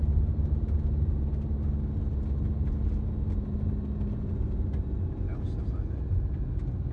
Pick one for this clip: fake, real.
real